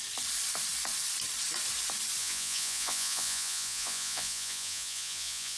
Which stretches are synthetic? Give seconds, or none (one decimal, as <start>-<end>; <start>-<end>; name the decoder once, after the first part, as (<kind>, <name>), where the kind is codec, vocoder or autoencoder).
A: 2.2-5.6 (vocoder, Vocos)